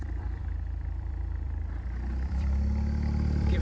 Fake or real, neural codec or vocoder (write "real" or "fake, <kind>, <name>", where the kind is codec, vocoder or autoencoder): fake, vocoder, BigVGAN v2